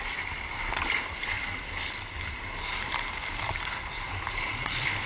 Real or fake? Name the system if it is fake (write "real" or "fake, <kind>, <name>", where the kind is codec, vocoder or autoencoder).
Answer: real